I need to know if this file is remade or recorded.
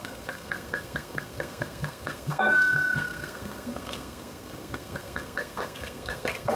remade